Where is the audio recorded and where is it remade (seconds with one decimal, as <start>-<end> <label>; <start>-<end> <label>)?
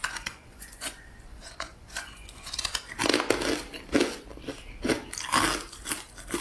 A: 0.0-2.7 remade; 2.7-6.4 recorded